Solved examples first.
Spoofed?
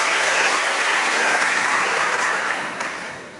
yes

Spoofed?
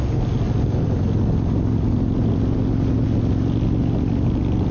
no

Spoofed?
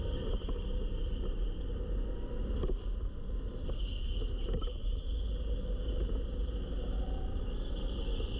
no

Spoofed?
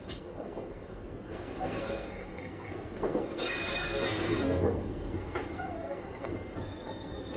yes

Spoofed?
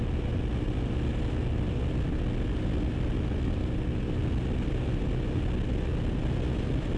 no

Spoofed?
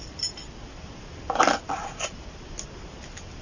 no